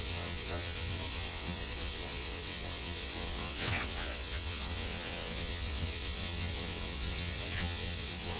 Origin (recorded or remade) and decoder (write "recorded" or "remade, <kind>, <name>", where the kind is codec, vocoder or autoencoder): remade, vocoder, WaveNeXt